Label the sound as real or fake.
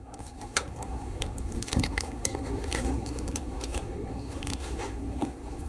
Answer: fake